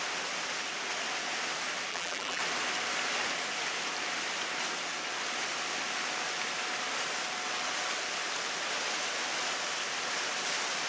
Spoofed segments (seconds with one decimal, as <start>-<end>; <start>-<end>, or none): 1.9-2.4